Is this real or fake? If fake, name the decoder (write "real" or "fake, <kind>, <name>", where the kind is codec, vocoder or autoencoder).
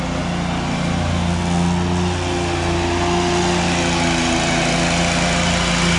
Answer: real